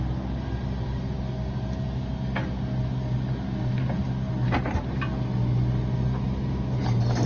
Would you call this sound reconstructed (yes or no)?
no